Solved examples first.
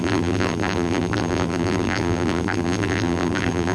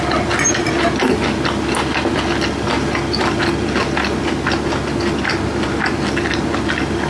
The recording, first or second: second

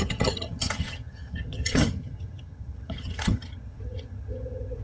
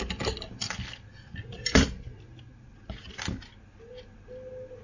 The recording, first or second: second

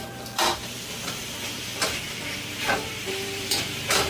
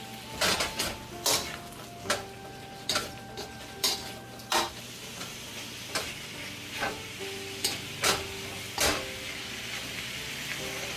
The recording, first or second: second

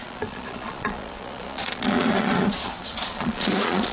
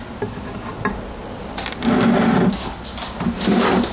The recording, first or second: second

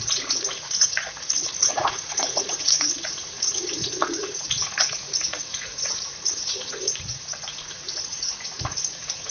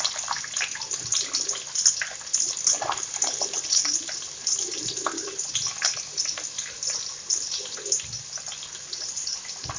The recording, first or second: second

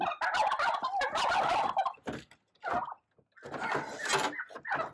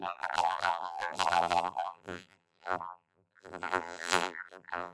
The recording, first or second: first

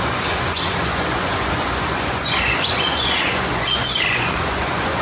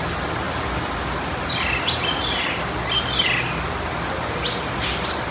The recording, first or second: second